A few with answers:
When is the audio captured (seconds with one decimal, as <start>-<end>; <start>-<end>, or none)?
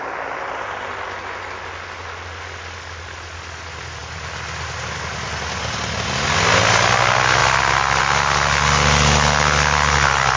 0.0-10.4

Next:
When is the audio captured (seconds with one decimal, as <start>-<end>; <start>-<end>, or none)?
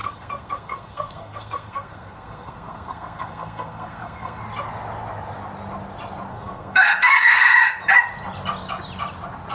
4.4-6.3; 7.4-9.5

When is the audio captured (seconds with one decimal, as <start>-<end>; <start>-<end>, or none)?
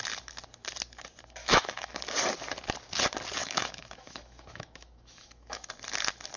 0.0-1.4; 2.0-3.4; 5.7-6.4